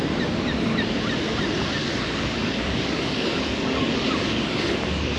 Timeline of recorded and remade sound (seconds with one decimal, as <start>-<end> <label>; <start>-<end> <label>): 0.0-1.8 recorded; 1.8-5.2 remade